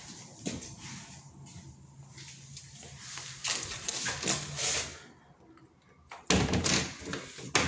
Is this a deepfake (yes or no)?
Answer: no